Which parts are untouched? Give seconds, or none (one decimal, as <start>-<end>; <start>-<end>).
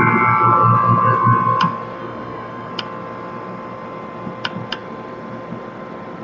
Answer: 0.0-2.0; 2.7-6.2